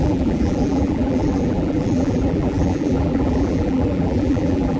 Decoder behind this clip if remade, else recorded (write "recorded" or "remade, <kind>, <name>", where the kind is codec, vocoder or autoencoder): remade, vocoder, BigVGAN v2